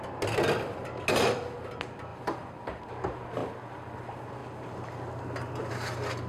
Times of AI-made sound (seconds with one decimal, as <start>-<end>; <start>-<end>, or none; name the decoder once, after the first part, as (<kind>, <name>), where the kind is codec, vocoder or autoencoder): 2.1-2.8 (vocoder, BigVGAN v2)